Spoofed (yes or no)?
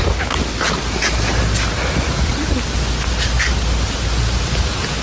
no